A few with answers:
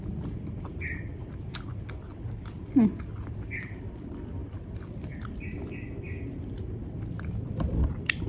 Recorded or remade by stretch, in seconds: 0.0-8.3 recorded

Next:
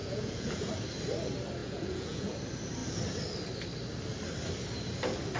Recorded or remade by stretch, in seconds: 0.0-0.7 remade; 0.7-1.6 recorded; 1.6-2.3 remade; 2.3-5.4 recorded

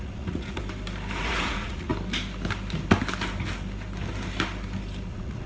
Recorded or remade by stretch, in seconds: 0.0-0.6 remade; 0.6-1.2 recorded; 1.2-1.9 remade; 1.9-5.1 recorded; 5.1-5.5 remade

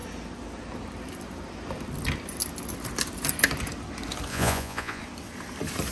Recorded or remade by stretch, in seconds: 0.0-4.3 recorded; 4.3-5.0 remade; 5.0-5.9 recorded

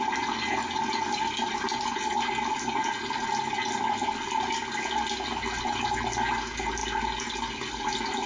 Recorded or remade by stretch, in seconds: 0.0-8.3 recorded

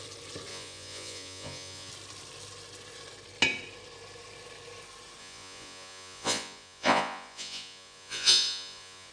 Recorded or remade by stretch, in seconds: 0.0-0.5 recorded; 0.5-1.9 remade; 1.9-5.2 recorded; 5.2-9.1 remade

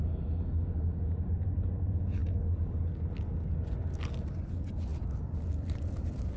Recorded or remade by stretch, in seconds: 0.0-6.4 recorded

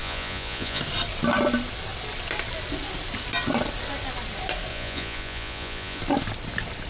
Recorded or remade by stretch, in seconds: 0.0-0.8 remade; 0.8-4.7 recorded; 4.7-6.0 remade; 6.0-6.9 recorded